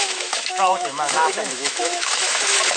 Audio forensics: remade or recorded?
remade